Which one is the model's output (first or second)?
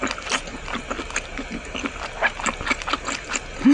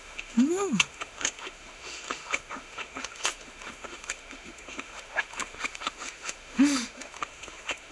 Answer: second